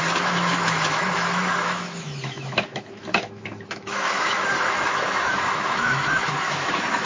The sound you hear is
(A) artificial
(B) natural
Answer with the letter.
A